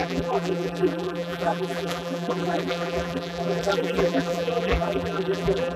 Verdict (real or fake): fake